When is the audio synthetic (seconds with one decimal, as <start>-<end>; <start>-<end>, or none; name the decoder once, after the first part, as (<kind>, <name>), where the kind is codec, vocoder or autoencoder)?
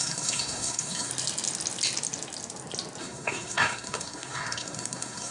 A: 0.0-1.1 (codec, SNAC); 3.0-5.3